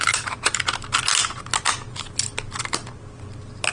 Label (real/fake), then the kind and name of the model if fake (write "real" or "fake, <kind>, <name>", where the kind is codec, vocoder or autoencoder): real